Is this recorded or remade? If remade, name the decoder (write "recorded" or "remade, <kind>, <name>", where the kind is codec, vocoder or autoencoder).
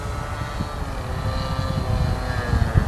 recorded